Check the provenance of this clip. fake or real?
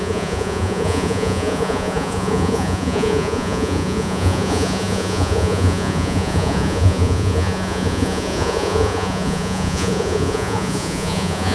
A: fake